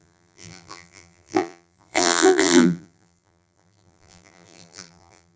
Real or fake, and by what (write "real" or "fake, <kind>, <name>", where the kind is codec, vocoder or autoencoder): fake, vocoder, BigVGAN v2